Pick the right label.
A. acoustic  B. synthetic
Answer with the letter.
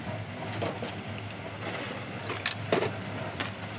A